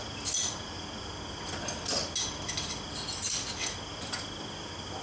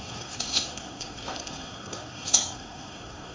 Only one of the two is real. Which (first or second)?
first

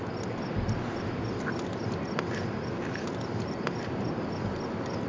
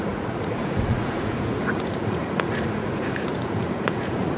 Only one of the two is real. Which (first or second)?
first